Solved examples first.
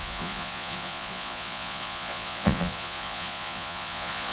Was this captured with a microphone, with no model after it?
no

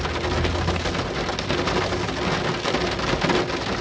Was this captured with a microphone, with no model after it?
yes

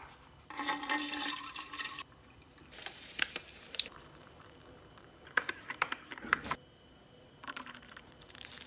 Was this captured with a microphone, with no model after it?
no